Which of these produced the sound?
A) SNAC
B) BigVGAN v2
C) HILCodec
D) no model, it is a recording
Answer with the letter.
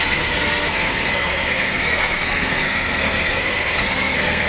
A